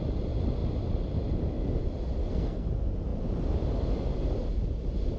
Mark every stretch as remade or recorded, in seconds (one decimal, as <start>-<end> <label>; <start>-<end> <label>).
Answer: 0.0-2.2 recorded; 2.2-2.7 remade; 2.7-5.2 recorded